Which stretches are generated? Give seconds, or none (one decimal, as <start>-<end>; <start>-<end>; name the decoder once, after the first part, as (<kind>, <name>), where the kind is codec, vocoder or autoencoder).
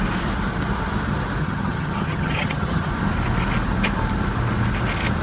1.4-2.9 (vocoder, HiFi-GAN)